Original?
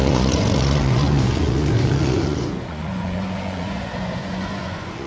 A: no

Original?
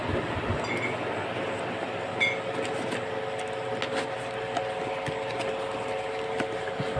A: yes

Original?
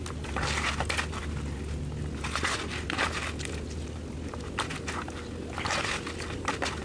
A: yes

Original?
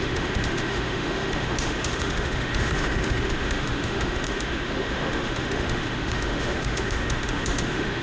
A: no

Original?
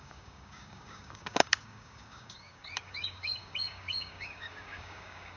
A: no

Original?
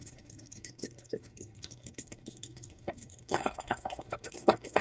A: no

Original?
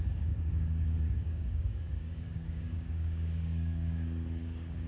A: no